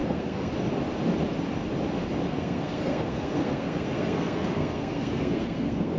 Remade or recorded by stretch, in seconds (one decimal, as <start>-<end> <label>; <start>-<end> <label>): 0.0-0.5 remade; 0.5-2.3 recorded; 2.3-6.0 remade